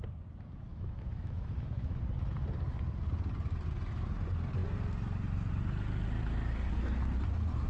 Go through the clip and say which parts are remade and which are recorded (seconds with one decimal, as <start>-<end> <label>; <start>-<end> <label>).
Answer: 0.0-0.7 recorded; 0.7-2.0 remade; 2.0-7.7 recorded